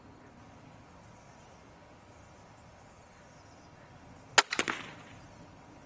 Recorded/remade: recorded